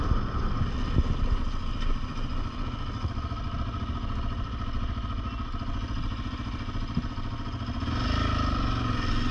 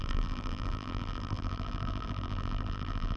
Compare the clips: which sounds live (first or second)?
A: first